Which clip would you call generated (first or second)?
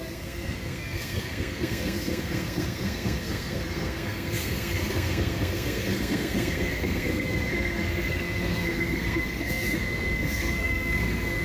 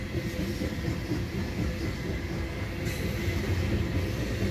first